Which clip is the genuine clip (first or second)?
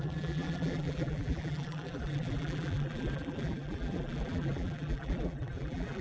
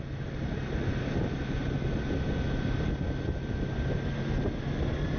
second